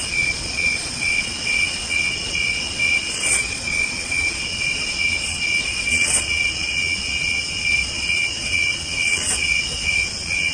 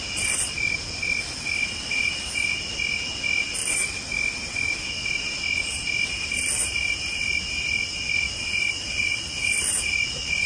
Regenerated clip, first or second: first